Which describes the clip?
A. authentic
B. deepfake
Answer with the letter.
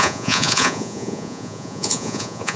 B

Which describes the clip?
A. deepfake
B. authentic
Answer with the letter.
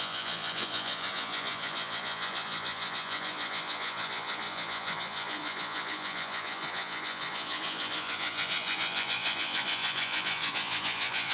A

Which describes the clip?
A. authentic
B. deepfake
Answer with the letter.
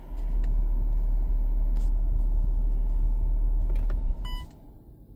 A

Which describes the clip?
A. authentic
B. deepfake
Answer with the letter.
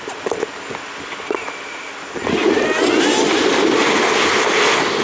A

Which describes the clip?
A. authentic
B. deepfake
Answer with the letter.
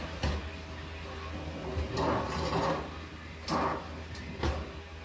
A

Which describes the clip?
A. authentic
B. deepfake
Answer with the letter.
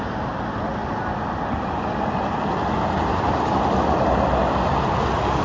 A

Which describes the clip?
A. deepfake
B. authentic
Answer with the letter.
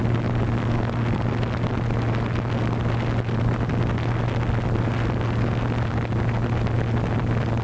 B